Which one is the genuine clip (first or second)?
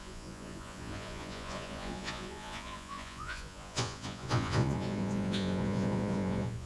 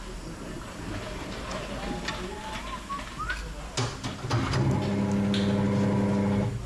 second